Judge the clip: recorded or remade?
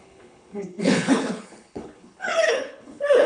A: remade